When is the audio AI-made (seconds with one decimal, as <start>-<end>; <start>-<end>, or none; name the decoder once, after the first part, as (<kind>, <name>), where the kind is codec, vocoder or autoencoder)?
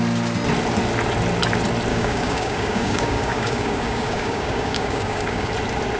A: 1.9-5.5 (codec, DAC)